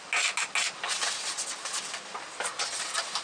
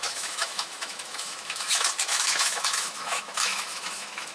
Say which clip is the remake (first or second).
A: second